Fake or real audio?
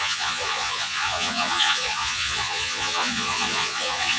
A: fake